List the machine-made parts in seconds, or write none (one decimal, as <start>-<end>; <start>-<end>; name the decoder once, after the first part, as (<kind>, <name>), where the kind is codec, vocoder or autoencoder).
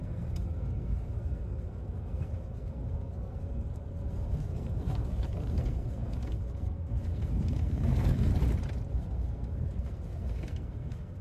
0.0-8.3 (codec, SNAC); 8.9-11.2